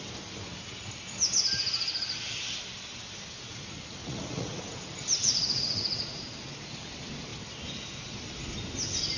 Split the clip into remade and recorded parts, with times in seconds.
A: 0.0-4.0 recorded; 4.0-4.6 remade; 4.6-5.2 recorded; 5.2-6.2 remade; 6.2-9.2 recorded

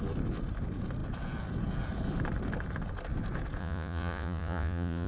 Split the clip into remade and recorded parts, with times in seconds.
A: 0.0-3.6 recorded; 3.6-5.1 remade